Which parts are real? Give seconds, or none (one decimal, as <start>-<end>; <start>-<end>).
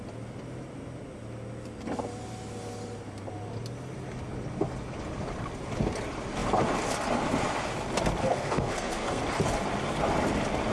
0.0-8.2; 9.2-10.7